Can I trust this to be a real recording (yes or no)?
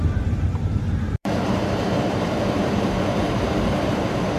no